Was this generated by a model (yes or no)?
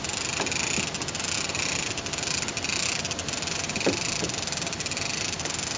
no